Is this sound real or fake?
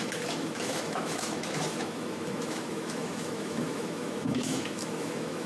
fake